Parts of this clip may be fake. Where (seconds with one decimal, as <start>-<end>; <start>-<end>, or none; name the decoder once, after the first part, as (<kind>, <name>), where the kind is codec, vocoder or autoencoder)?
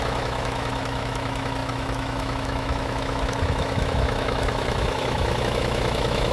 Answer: 0.0-6.3 (autoencoder, DAC-VAE)